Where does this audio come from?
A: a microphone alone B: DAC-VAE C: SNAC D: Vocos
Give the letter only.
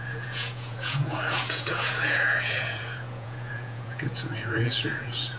D